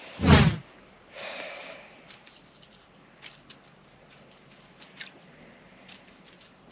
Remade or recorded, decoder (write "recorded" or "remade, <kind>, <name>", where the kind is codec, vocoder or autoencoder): recorded